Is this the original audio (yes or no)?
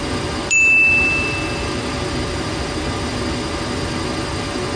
yes